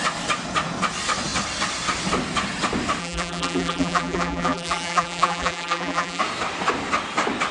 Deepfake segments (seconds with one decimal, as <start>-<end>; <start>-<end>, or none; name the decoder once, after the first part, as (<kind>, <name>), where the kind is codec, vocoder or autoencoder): 3.0-6.2 (vocoder, BigVGAN v2)